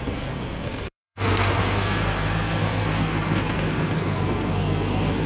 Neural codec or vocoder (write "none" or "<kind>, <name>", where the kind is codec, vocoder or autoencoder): codec, SNAC